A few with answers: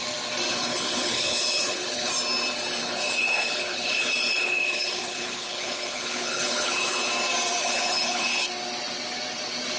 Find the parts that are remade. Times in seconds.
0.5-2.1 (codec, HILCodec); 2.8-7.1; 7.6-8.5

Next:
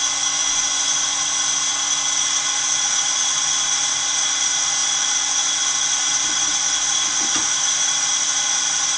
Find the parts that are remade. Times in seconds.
0.4-1.0 (vocoder, Vocos)

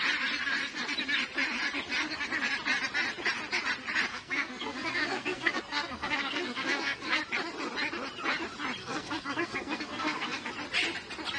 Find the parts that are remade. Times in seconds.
4.1-7.2 (codec, SNAC); 8.8-10.5

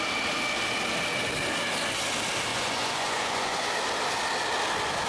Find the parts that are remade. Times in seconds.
2.5-3.7 (vocoder, Vocos)

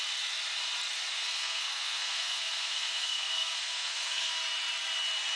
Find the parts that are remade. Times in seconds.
1.1-4.3 (codec, SNAC)